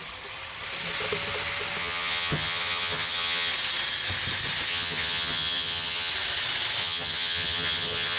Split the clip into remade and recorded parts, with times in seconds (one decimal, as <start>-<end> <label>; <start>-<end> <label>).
0.0-1.8 recorded; 1.8-3.5 remade; 3.5-4.7 recorded; 4.7-6.1 remade; 6.1-6.8 recorded; 6.8-8.2 remade